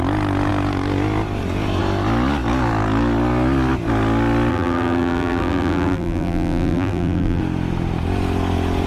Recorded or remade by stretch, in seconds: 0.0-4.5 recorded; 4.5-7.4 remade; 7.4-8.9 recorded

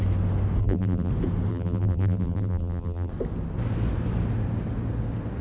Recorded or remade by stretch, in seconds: 0.0-0.6 recorded; 0.6-1.1 remade; 1.1-1.5 recorded; 1.5-3.1 remade; 3.1-5.4 recorded

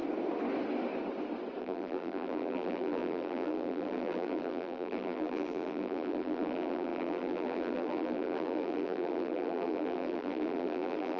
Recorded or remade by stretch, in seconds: 0.0-1.6 recorded; 1.6-11.2 remade

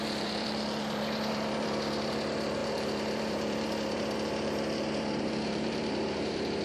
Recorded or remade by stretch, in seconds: 0.0-6.6 remade